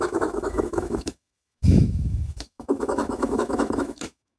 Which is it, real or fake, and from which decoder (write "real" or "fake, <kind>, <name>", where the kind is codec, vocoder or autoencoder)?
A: fake, autoencoder, DAC-VAE